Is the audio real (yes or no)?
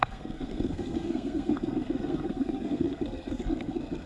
no